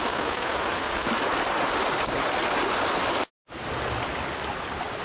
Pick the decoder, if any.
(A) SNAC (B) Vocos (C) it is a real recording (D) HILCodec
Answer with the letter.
C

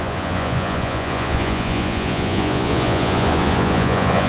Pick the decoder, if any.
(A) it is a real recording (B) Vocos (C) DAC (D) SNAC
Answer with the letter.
B